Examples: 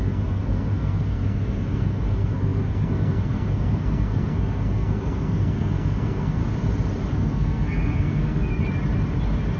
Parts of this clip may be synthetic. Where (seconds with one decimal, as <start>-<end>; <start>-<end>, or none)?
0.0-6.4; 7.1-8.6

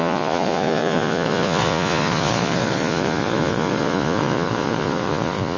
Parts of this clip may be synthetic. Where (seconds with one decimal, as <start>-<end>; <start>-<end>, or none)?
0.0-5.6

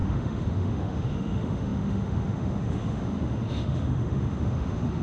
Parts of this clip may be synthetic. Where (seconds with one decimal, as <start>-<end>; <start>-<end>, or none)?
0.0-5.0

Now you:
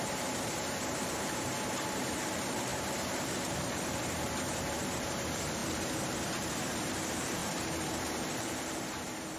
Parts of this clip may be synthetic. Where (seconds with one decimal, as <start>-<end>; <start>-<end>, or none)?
0.0-9.4